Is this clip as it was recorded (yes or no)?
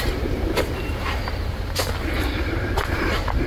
no